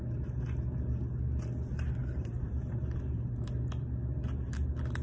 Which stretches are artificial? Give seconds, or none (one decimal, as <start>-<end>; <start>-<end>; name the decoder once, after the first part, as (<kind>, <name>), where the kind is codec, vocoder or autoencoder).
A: 2.0-3.7 (vocoder, BigVGAN v2)